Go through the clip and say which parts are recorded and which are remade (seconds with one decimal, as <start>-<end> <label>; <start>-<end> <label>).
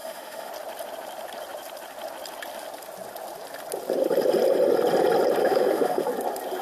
0.0-0.5 remade; 0.5-5.4 recorded; 5.4-6.1 remade; 6.1-6.6 recorded